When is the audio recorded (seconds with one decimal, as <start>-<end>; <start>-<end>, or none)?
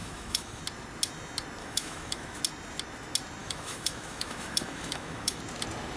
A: 0.6-1.6; 2.4-3.4; 5.4-6.0